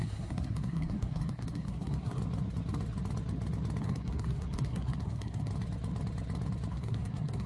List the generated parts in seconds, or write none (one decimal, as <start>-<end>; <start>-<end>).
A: 0.0-2.2; 3.8-5.5; 6.7-7.5